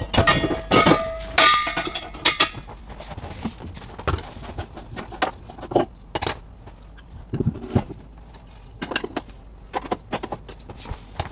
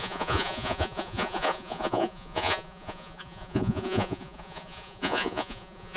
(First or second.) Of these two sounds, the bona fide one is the first